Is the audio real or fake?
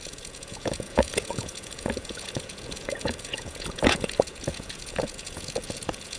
fake